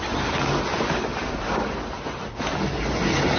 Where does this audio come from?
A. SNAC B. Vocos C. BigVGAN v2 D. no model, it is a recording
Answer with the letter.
D